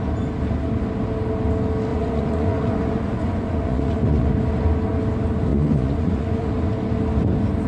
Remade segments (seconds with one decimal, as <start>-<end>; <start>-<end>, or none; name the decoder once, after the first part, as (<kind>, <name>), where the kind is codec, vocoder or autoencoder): 1.9-4.3 (vocoder, Vocos); 5.5-6.5